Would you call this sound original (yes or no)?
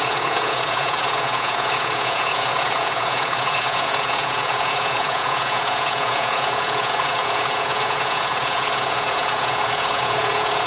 no